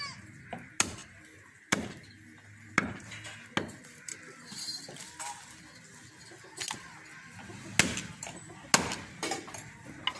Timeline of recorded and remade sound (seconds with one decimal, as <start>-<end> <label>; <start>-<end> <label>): 0.0-10.2 recorded